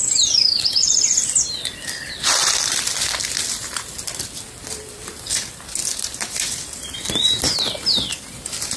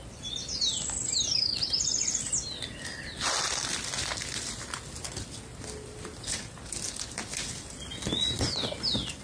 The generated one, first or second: first